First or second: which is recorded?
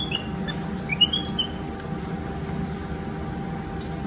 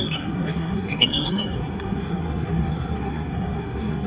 first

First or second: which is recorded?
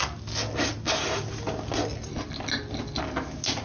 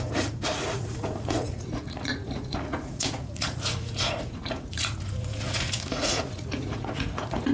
first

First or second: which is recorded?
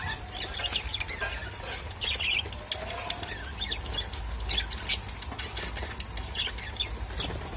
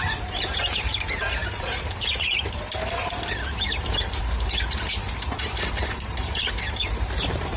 first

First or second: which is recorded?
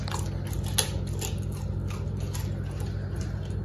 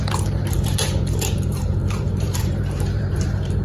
first